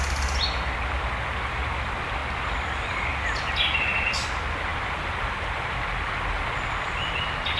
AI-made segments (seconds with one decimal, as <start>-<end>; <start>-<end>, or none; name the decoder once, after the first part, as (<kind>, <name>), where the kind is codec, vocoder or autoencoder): none